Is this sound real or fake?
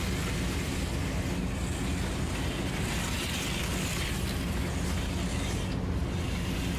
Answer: real